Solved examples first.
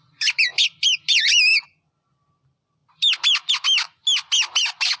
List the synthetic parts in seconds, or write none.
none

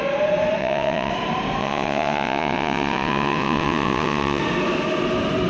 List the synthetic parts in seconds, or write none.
0.6-1.1 (vocoder, WaveNeXt); 1.6-4.4

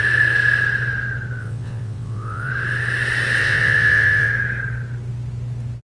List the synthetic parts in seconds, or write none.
1.4-2.5 (vocoder, WaveNeXt); 3.4-4.3